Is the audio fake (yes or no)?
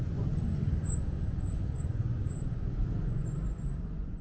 yes